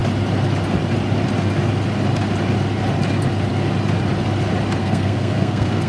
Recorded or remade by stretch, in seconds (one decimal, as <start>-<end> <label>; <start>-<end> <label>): 0.0-4.8 recorded; 4.8-5.9 remade